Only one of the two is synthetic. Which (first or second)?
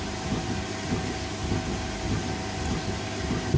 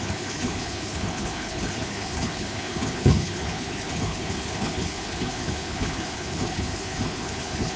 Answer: second